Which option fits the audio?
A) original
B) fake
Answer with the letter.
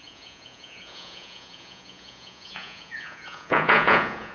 B